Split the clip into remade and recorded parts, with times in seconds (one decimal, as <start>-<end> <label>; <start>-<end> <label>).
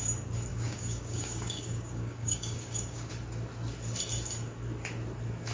0.0-0.5 recorded; 0.5-3.1 remade; 3.1-5.5 recorded